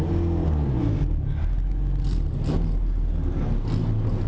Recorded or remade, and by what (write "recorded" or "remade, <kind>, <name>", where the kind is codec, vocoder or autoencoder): recorded